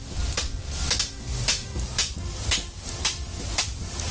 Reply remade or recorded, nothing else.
recorded